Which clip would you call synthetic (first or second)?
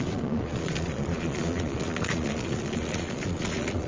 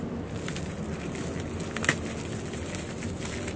first